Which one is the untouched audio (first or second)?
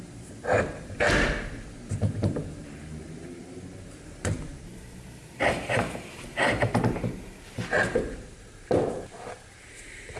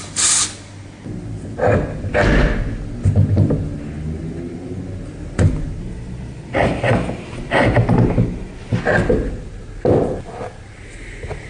second